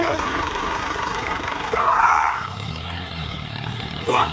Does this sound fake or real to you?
fake